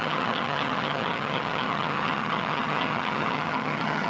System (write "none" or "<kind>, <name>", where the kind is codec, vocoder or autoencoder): vocoder, HiFi-GAN